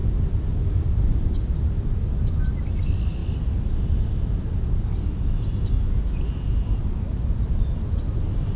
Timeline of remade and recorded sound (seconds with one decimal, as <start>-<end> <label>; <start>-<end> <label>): 0.0-8.6 recorded